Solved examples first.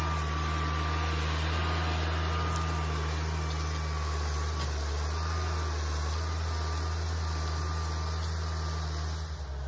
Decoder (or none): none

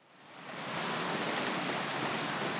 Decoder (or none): vocoder, BigVGAN v2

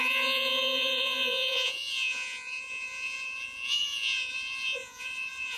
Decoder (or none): vocoder, Vocos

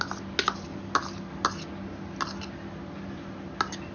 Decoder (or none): none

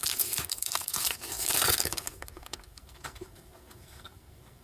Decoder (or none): codec, SNAC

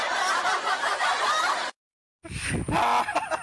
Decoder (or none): none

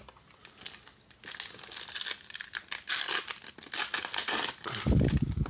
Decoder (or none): none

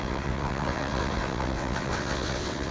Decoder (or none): vocoder, WaveNeXt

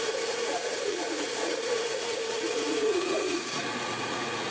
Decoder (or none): vocoder, Vocos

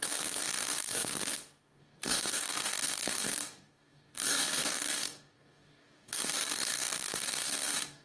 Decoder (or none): codec, DAC